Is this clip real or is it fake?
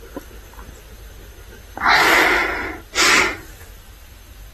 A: real